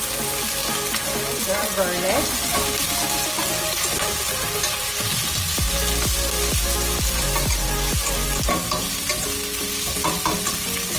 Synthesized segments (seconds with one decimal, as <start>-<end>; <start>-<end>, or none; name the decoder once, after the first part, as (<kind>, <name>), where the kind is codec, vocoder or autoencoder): none